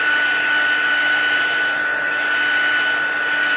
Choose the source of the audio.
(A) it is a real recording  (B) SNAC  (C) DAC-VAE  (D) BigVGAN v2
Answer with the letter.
A